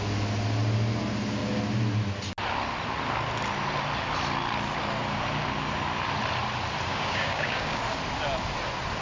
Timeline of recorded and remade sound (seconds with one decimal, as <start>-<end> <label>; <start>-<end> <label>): 0.0-6.9 recorded; 6.9-7.8 remade; 7.8-9.0 recorded